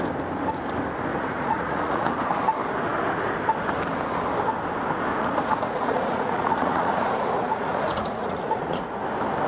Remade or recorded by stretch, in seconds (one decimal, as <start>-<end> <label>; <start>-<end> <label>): 0.0-1.1 recorded; 1.1-2.2 remade; 2.2-5.1 recorded; 5.1-9.0 remade; 9.0-9.5 recorded